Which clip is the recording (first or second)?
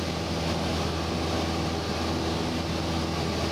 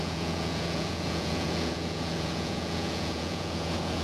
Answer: first